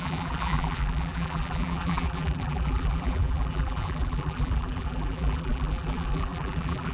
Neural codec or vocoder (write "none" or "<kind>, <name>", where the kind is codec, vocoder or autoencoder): vocoder, BigVGAN v2